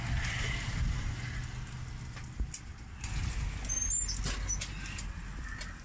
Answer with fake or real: real